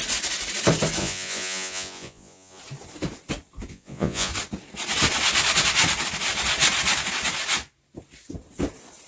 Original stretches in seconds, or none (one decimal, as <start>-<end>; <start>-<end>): 0.0-1.0; 2.6-3.7; 4.3-9.1